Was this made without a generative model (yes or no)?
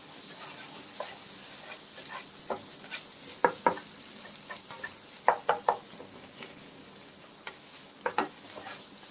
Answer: yes